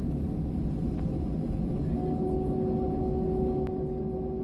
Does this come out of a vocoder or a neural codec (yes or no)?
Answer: no